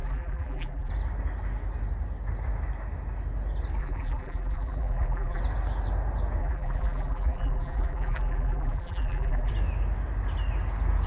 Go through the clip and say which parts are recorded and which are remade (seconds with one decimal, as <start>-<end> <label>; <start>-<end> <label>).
0.0-0.9 remade; 0.9-3.8 recorded; 3.8-5.4 remade; 5.4-6.4 recorded; 6.4-9.5 remade; 9.5-11.1 recorded